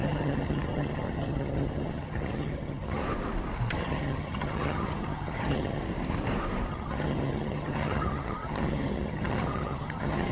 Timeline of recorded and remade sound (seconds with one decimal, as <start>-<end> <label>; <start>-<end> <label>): 0.0-3.0 remade; 3.0-3.7 recorded; 3.7-5.8 remade; 5.8-6.7 recorded; 6.7-10.3 remade